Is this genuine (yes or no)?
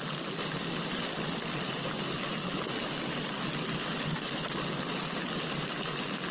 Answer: yes